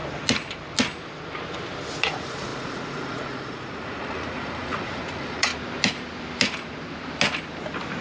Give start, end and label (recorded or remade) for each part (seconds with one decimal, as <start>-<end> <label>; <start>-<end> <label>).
0.0-2.0 recorded; 2.0-5.5 remade; 5.5-8.0 recorded